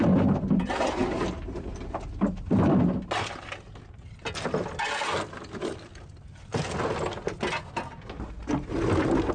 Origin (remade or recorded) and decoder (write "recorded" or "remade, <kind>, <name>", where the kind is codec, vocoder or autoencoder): recorded